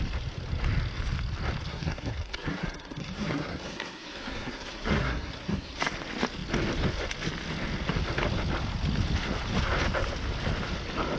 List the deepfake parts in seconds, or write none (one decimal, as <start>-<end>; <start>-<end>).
1.7-5.8